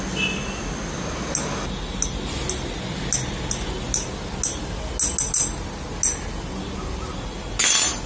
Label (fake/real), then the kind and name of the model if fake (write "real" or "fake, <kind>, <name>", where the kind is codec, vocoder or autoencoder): real